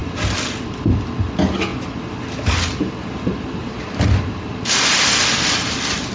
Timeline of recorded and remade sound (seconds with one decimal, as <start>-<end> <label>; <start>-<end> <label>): 0.0-6.1 recorded